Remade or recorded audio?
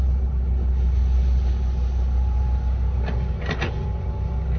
recorded